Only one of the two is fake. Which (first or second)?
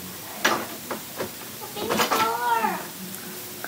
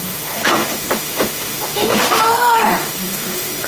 second